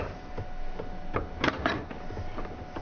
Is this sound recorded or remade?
recorded